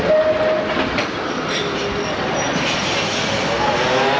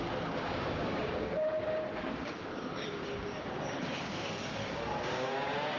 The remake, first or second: second